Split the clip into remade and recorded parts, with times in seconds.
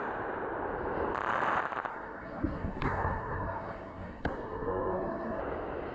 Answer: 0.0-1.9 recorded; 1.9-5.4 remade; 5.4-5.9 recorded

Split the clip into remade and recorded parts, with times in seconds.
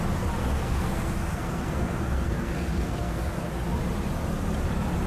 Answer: 0.0-0.4 recorded; 0.4-3.5 remade; 3.5-5.1 recorded